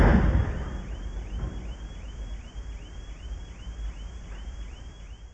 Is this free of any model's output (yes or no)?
yes